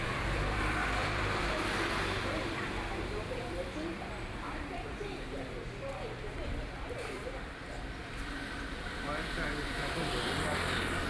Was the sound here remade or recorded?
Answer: remade